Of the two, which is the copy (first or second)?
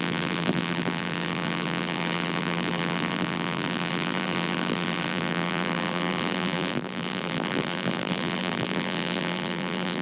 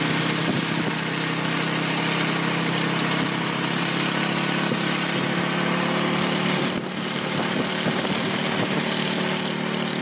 first